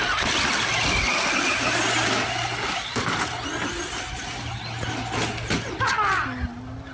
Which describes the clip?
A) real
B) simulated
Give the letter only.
A